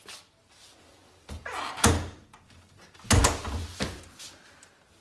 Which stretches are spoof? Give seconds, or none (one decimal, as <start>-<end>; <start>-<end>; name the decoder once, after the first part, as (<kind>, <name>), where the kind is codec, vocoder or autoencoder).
0.4-3.4 (vocoder, BigVGAN v2)